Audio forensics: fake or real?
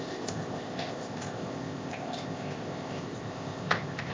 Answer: fake